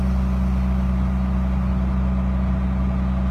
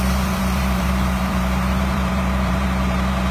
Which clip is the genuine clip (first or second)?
first